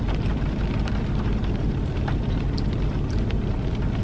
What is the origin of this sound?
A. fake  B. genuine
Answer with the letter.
A